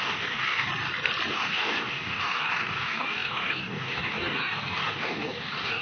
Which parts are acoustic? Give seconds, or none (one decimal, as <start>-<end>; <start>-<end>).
0.7-1.3